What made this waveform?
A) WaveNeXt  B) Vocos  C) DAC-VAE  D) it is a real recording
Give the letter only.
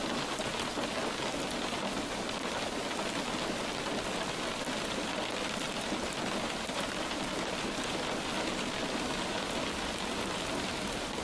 D